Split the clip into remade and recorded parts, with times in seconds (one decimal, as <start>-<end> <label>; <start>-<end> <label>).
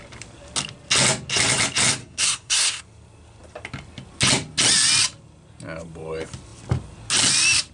0.0-2.0 recorded; 2.0-2.8 remade; 2.8-7.7 recorded